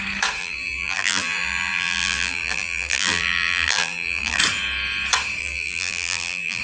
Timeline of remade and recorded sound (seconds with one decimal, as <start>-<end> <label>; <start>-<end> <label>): 0.0-0.4 recorded; 0.4-4.4 remade; 4.4-5.4 recorded; 5.4-6.6 remade